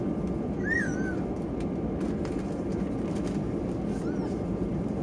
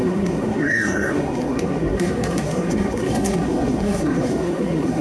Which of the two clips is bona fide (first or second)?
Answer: first